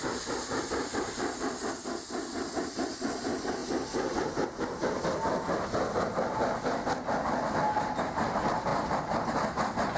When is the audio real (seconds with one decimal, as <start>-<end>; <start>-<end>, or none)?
0.0-10.0

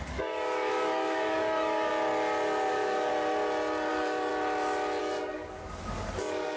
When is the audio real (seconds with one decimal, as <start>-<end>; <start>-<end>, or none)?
1.9-2.7; 3.1-3.9; 4.3-5.0

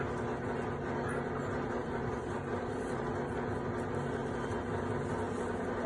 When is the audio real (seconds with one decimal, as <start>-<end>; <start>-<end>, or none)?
0.0-1.8; 3.0-4.2; 4.8-5.9